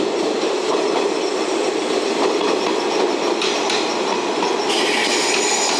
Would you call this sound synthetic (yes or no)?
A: no